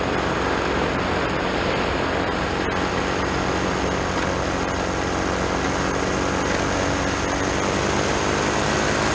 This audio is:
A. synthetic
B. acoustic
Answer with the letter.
B